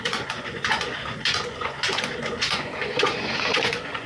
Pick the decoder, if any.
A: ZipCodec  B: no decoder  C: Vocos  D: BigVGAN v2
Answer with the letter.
C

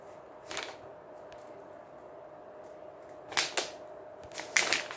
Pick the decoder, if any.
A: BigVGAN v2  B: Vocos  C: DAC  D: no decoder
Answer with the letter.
D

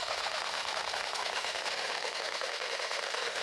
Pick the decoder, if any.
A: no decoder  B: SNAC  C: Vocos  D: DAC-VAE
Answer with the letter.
D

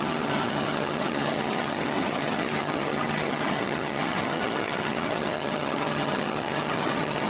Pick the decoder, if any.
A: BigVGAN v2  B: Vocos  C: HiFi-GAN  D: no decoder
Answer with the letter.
C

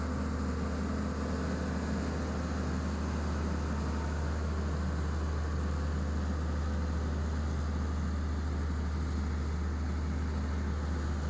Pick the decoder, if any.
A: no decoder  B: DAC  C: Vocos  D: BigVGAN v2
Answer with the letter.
A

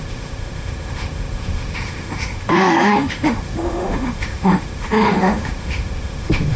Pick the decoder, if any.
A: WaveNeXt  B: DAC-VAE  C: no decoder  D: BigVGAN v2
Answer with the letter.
B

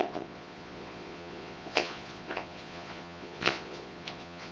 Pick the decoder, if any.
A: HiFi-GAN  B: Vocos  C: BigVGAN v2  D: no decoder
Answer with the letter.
B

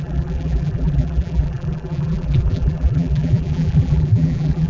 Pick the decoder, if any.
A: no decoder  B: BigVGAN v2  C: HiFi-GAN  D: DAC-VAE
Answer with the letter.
B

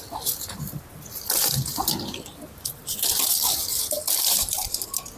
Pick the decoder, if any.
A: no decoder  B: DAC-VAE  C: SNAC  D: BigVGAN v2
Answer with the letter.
D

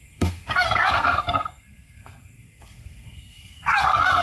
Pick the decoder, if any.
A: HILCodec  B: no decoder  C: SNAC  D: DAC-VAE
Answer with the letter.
C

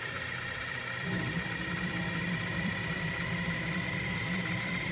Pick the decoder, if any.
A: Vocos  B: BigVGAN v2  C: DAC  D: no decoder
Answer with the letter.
B